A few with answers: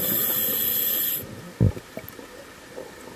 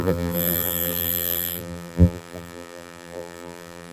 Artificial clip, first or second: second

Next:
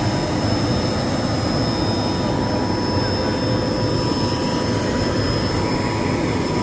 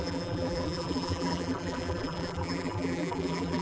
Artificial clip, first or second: second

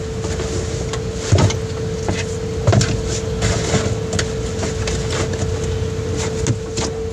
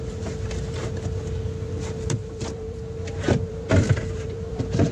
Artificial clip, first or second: second